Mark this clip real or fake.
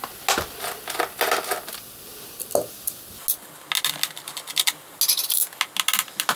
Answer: real